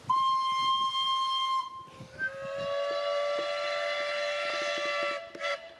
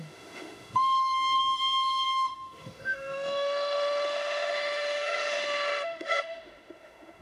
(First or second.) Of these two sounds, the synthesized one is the second